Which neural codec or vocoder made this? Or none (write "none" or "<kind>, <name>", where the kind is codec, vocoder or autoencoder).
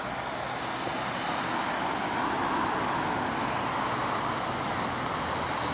none